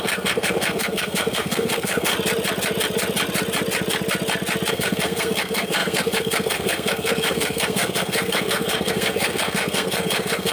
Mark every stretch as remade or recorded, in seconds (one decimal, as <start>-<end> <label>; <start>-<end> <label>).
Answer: 0.0-2.1 remade; 2.1-4.7 recorded; 4.7-10.5 remade